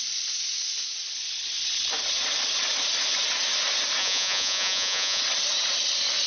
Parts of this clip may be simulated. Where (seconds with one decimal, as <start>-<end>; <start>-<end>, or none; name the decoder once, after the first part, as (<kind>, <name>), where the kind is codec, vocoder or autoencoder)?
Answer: 4.0-5.2 (vocoder, Vocos)